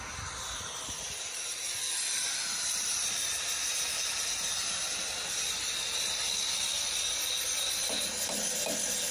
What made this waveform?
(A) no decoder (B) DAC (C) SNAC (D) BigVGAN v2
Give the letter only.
A